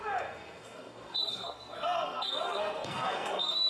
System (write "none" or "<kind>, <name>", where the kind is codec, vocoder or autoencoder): codec, SNAC